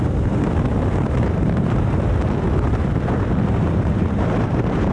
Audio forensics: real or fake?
fake